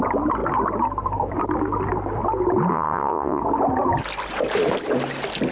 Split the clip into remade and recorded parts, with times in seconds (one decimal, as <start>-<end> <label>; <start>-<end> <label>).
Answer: 0.0-2.7 recorded; 2.7-3.4 remade; 3.4-5.5 recorded